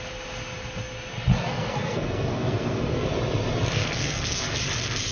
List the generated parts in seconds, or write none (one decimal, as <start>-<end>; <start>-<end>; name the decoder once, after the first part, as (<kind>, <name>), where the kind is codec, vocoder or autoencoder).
1.3-3.1 (codec, SNAC); 3.7-4.6

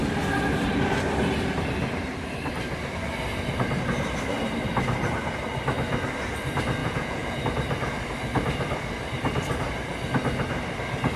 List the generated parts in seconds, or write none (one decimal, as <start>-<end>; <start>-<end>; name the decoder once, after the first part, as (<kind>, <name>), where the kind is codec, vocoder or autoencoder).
6.8-7.4 (vocoder, Vocos)

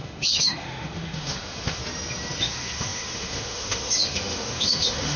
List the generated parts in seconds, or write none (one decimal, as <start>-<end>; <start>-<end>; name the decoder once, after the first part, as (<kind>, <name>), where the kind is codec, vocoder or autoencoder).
0.0-1.8 (autoencoder, DAC-VAE); 2.4-5.2